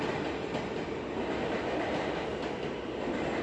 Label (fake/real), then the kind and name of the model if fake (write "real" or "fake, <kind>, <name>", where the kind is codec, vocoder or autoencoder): real